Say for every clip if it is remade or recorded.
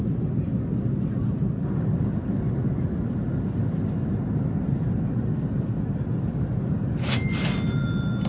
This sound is recorded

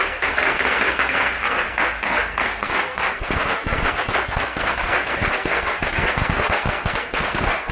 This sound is remade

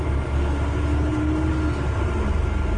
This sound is recorded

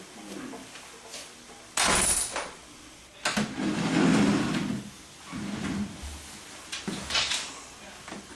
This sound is recorded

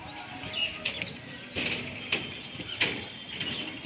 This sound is recorded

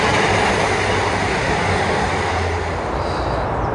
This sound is recorded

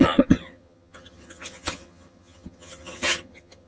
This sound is remade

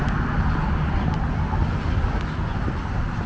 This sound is recorded